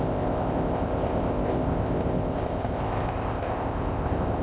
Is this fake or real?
fake